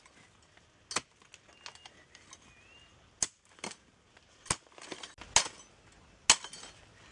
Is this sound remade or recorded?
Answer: recorded